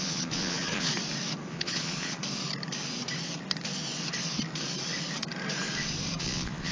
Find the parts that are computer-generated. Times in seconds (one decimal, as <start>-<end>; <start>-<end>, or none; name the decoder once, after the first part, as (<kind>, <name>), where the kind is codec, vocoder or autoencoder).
0.0-0.9 (vocoder, Vocos); 1.5-2.2; 6.2-6.7